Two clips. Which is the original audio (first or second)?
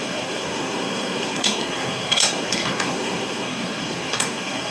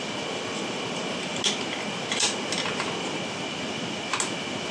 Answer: second